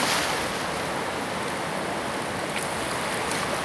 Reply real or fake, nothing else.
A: real